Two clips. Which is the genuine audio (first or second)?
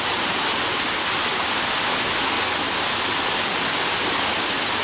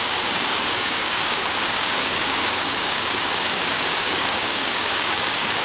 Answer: first